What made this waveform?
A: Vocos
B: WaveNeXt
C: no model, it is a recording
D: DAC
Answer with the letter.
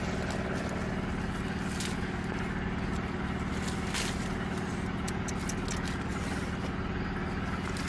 C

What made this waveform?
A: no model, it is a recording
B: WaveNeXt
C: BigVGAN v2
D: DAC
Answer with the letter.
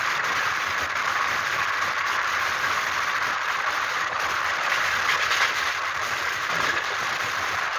A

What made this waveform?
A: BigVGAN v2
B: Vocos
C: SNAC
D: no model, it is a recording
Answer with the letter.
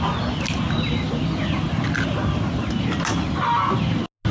D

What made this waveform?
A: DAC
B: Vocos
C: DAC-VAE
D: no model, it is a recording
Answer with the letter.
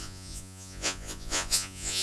B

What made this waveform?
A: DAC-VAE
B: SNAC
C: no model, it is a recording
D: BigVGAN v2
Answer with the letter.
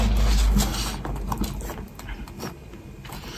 C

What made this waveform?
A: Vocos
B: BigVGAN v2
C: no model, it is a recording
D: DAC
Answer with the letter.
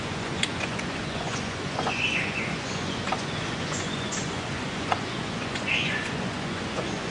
A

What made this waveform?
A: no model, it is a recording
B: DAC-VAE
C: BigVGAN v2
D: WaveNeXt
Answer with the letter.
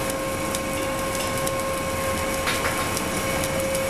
A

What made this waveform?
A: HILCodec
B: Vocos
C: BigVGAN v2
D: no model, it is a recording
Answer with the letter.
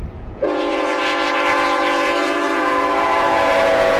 B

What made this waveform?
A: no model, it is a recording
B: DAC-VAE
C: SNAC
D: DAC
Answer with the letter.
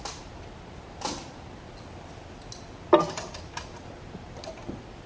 A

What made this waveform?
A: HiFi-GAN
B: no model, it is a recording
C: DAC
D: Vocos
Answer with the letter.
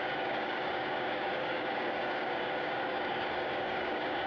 C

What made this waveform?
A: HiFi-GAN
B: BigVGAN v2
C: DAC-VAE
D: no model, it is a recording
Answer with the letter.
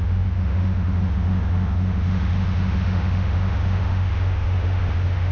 C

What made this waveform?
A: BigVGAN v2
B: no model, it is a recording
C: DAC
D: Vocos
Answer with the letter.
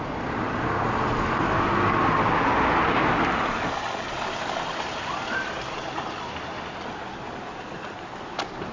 B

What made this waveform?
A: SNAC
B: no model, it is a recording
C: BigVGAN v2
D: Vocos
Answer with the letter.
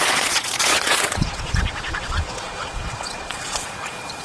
D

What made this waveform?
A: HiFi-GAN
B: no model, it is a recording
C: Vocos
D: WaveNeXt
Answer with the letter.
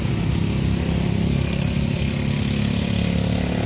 B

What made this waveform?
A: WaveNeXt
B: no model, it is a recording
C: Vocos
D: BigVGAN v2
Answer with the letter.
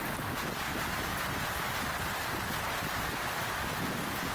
B